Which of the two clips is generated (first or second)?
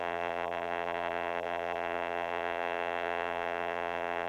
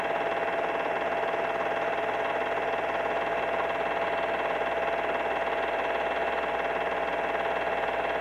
first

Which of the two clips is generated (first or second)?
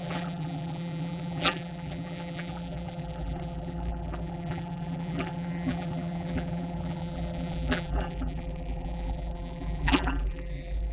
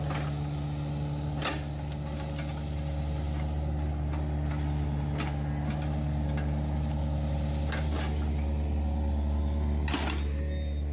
first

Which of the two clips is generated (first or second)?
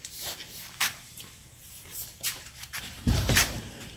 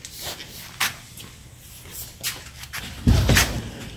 first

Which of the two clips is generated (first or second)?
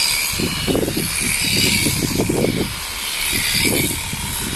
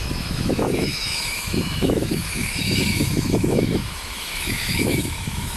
second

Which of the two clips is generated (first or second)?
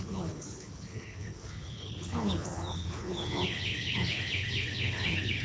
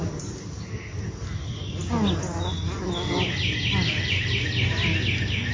first